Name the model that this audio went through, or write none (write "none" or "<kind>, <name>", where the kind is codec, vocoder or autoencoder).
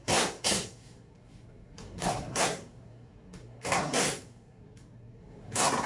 codec, SNAC